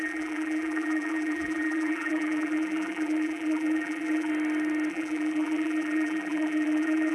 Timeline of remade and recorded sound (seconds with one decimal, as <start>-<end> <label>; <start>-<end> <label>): 0.0-4.3 remade; 4.3-4.9 recorded; 4.9-7.1 remade